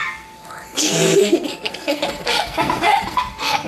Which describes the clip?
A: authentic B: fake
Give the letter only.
B